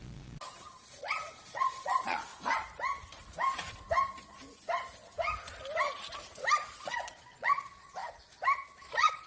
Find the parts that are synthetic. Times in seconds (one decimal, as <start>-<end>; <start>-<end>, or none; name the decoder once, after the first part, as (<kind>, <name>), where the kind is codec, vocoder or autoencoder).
0.0-2.3 (vocoder, Vocos); 6.8-8.0; 8.8-9.3